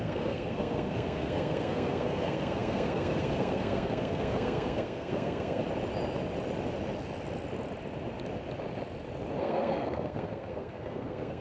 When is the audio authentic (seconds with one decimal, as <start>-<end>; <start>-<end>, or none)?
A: 5.6-9.4